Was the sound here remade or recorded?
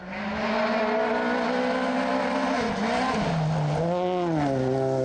recorded